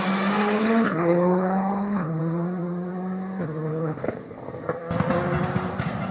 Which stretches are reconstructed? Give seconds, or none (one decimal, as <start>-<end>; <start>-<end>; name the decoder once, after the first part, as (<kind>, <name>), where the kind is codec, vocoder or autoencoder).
0.4-2.2 (codec, HILCodec); 3.7-4.4